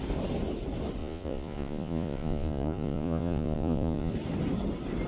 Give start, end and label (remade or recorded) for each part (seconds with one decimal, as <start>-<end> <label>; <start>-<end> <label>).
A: 0.0-1.0 recorded; 1.0-4.1 remade; 4.1-5.1 recorded